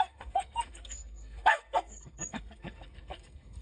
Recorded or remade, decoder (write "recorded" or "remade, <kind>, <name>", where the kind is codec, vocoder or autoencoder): remade, codec, SNAC